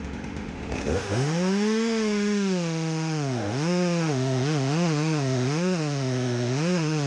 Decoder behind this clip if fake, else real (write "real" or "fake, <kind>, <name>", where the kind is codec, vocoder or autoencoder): fake, autoencoder, DAC-VAE